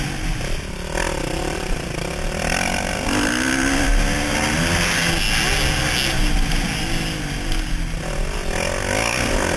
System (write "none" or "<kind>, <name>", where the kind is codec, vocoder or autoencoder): none